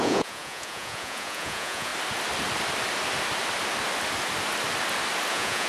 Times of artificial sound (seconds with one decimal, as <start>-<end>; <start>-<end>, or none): 0.0-1.9; 5.3-5.7